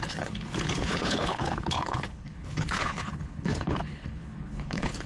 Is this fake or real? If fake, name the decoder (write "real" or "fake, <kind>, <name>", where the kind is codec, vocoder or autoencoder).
fake, codec, HILCodec